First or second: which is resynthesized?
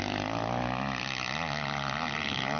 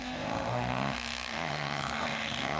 second